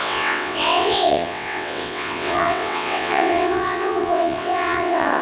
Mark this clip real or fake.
fake